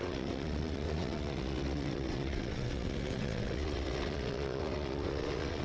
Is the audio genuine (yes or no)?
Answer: no